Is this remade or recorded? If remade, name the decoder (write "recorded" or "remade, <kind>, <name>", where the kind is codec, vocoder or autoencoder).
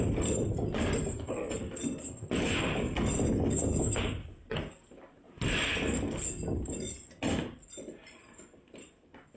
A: recorded